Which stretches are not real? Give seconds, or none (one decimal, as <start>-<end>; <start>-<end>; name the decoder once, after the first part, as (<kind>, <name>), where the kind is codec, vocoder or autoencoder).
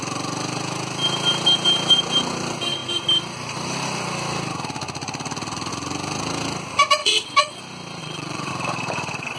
7.0-7.6 (vocoder, WaveNeXt); 8.0-8.5